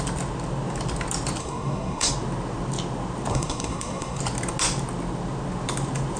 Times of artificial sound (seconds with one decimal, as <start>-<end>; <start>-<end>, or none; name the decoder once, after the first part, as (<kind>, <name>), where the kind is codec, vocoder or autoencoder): 1.4-2.1 (codec, SNAC); 3.3-4.2